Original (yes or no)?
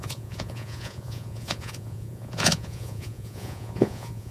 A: no